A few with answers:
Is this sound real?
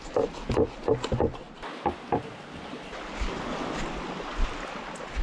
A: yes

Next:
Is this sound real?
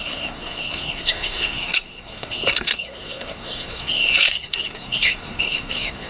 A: no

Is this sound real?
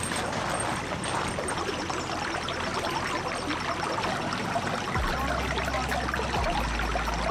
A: yes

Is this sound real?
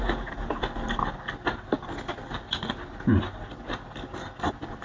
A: yes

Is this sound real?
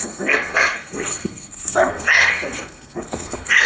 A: no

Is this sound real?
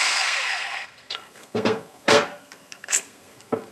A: no